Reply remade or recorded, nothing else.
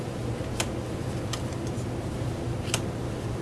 recorded